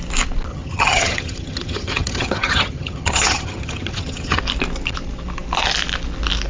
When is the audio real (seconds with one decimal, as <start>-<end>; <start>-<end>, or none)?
0.0-0.5; 4.4-6.5